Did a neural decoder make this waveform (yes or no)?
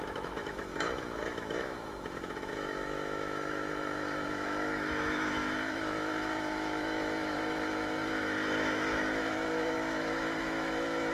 yes